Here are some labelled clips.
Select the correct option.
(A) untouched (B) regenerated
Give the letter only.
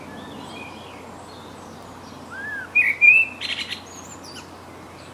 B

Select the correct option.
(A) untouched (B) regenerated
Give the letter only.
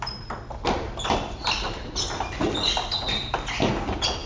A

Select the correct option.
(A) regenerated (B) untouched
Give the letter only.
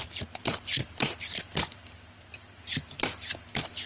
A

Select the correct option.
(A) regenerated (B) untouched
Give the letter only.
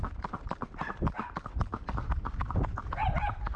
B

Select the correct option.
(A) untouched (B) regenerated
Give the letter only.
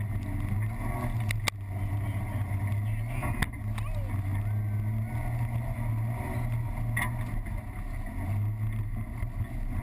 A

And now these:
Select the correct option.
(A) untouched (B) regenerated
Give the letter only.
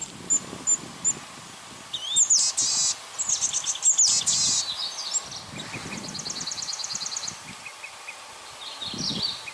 A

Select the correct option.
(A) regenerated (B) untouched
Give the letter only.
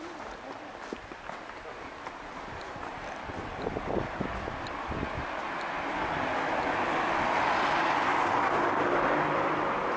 B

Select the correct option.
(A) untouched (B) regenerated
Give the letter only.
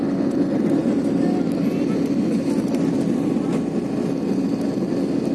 A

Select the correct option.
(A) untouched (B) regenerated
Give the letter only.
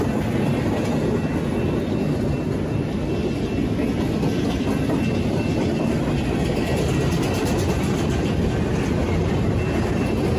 A